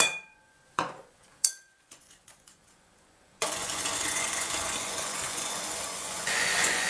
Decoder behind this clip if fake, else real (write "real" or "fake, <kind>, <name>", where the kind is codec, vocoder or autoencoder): fake, vocoder, Vocos